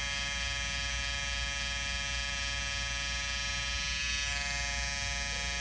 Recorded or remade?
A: recorded